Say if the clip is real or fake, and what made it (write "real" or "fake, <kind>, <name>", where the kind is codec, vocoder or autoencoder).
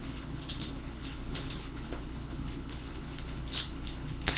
fake, codec, HILCodec